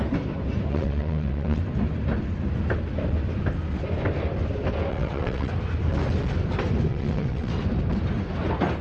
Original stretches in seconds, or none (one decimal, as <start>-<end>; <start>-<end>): 0.0-0.7; 1.6-4.9; 5.5-6.9; 7.5-8.8